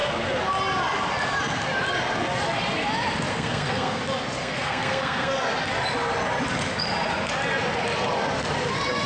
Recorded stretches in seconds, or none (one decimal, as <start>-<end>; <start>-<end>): 0.0-3.3; 4.0-4.4; 5.3-9.1